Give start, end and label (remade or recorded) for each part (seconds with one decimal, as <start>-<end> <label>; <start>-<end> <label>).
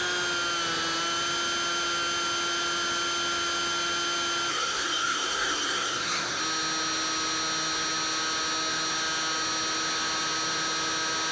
0.0-4.5 recorded; 4.5-6.4 remade; 6.4-11.3 recorded